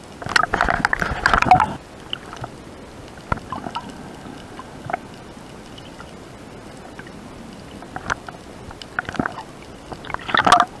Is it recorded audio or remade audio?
recorded